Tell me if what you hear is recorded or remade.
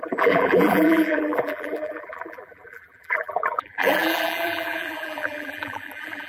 remade